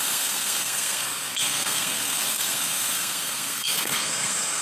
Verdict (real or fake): fake